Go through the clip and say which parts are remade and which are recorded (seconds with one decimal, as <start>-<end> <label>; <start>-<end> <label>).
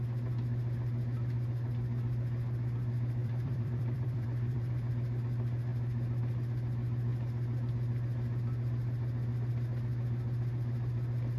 0.0-3.2 recorded; 3.2-4.9 remade; 4.9-11.4 recorded